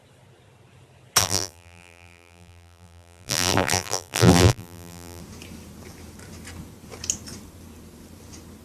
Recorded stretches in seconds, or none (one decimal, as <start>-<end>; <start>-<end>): 0.0-1.2; 5.2-8.6